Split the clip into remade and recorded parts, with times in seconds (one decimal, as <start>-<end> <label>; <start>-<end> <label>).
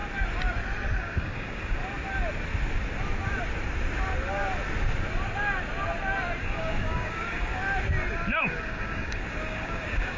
0.0-1.0 recorded; 1.0-1.8 remade; 1.8-6.4 recorded; 6.4-7.6 remade; 7.6-8.4 recorded; 8.4-10.2 remade